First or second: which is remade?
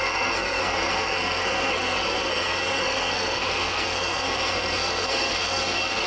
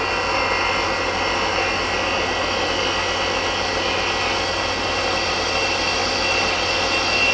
first